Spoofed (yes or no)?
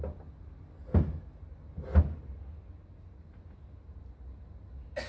no